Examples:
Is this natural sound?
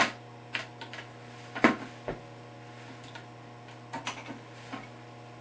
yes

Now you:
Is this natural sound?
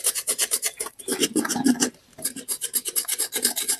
no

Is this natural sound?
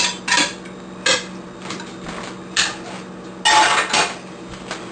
yes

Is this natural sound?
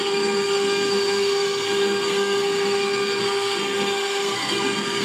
no